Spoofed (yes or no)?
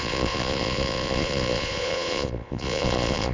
yes